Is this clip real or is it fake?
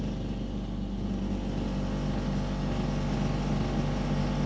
real